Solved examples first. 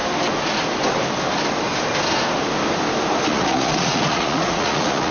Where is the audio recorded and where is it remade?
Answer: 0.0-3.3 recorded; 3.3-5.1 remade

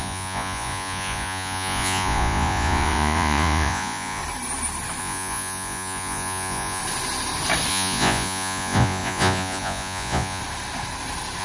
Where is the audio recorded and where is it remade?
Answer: 0.0-4.2 remade; 4.2-5.0 recorded; 5.0-6.8 remade; 6.8-7.7 recorded; 7.7-10.4 remade; 10.4-11.4 recorded